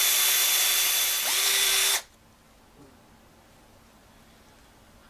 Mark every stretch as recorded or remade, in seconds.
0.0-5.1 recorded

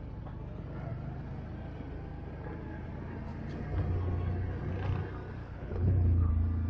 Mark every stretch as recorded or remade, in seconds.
0.0-5.4 recorded; 5.4-6.3 remade; 6.3-6.7 recorded

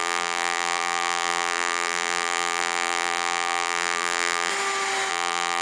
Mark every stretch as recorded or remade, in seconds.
0.0-4.5 remade; 4.5-5.1 recorded; 5.1-5.6 remade